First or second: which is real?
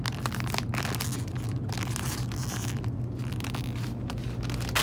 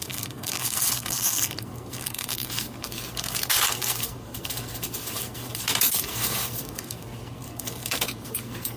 first